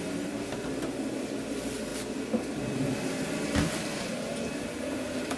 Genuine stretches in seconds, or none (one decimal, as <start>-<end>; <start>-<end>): 0.0-5.4